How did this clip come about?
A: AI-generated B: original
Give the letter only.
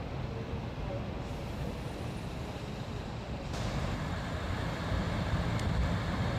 B